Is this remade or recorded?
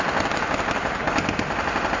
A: recorded